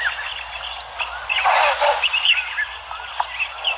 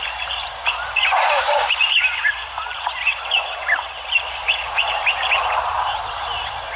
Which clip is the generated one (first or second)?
second